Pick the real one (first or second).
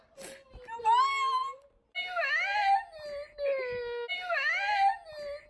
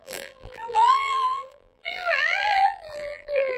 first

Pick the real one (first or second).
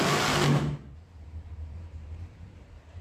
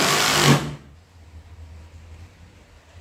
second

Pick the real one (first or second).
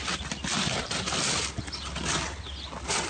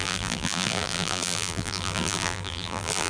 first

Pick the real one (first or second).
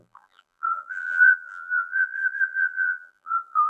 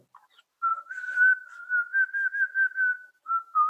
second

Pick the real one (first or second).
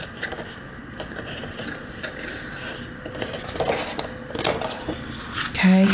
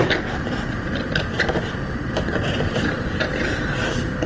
first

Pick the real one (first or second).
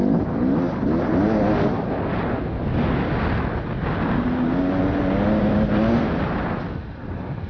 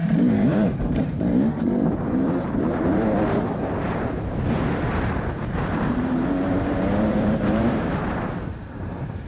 first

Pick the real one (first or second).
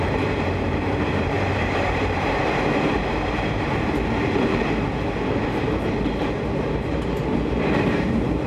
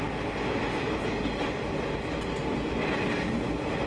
second